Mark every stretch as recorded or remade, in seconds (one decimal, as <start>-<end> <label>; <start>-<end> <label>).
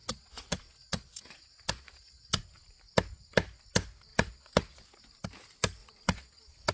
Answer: 0.0-2.4 remade; 2.4-4.1 recorded; 4.1-4.8 remade; 4.8-5.8 recorded; 5.8-6.7 remade